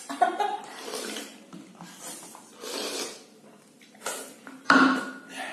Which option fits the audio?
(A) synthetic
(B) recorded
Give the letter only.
B